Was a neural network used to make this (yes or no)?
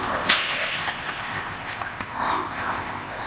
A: yes